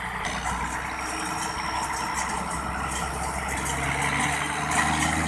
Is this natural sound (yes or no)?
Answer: yes